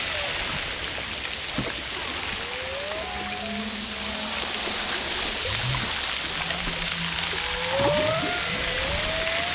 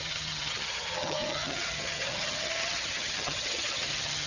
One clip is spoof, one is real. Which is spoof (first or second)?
second